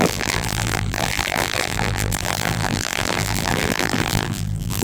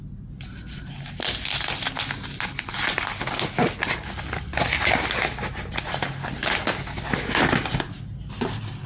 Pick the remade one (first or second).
first